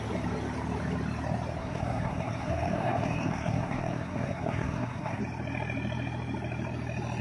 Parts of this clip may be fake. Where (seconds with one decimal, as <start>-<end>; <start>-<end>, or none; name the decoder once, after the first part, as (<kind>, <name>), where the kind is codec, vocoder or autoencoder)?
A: 1.6-5.2 (codec, SNAC)